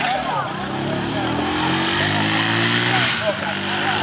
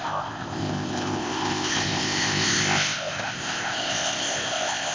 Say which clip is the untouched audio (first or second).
first